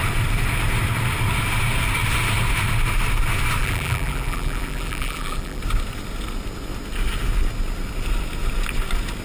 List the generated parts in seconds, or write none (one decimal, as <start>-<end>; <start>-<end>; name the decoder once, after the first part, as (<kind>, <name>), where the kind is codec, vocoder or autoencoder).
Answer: 3.6-5.6 (vocoder, BigVGAN v2)